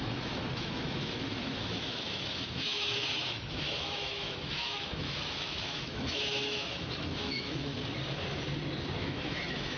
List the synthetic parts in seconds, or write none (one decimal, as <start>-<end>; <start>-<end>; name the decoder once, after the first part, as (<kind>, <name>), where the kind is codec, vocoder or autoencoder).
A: 0.0-7.7 (autoencoder, DAC-VAE); 9.0-9.8